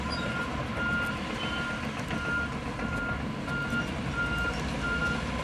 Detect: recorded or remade recorded